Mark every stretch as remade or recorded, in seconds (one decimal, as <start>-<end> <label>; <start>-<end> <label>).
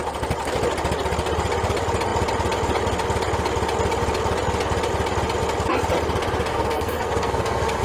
0.0-6.5 recorded; 6.5-7.8 remade